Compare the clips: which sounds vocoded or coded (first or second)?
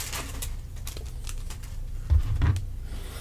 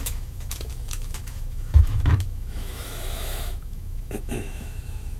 second